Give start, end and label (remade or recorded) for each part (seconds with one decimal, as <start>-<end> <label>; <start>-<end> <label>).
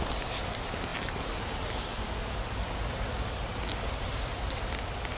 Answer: 0.0-5.2 recorded